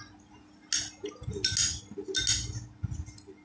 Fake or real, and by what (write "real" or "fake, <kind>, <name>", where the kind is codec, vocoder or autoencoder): real